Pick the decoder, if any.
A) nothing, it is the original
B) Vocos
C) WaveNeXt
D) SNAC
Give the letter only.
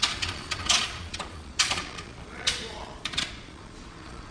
B